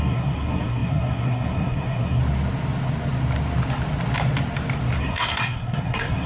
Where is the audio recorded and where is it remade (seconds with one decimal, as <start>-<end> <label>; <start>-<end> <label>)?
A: 0.0-2.2 remade; 2.2-5.0 recorded; 5.0-6.3 remade